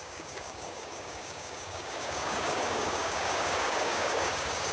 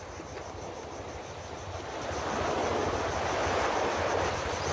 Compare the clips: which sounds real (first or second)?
second